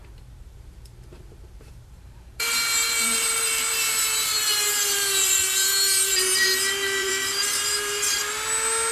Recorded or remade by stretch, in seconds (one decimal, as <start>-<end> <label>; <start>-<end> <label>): 0.0-8.2 remade; 8.2-8.9 recorded